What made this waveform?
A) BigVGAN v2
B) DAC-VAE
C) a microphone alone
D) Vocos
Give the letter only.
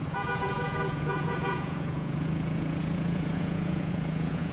D